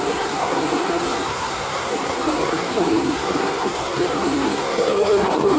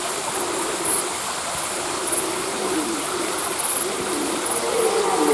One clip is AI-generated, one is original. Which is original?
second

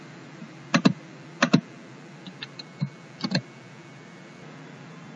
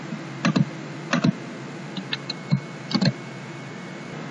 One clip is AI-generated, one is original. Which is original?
second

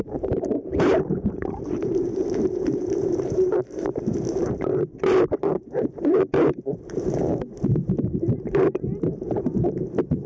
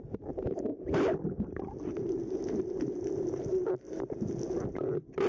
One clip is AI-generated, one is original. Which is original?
second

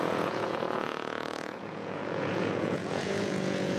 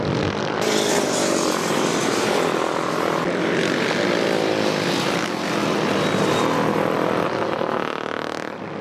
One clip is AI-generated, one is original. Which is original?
second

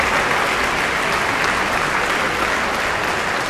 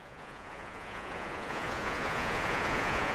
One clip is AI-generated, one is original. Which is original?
first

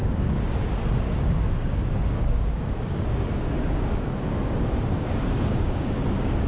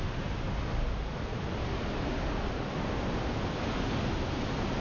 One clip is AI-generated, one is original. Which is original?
second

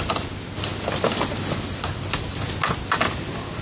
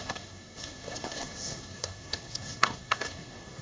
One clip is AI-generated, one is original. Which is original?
first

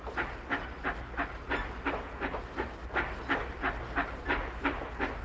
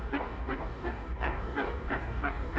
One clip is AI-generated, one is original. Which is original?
first